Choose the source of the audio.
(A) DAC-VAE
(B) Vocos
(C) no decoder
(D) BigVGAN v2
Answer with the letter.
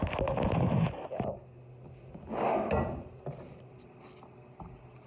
C